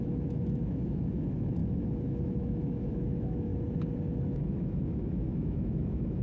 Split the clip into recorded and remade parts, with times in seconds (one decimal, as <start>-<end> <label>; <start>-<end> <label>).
0.0-3.5 remade; 3.5-4.5 recorded; 4.5-6.2 remade